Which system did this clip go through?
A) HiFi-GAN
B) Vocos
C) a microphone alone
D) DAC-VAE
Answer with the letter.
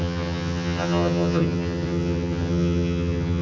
A